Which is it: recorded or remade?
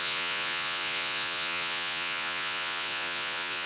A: remade